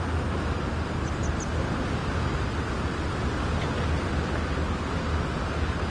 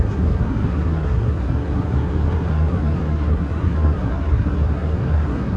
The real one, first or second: first